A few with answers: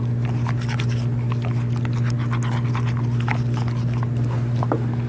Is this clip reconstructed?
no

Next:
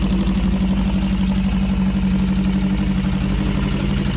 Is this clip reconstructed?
no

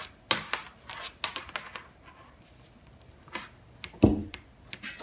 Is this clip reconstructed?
no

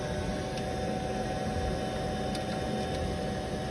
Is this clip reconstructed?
no